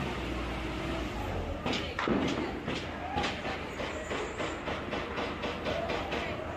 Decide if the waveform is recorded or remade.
recorded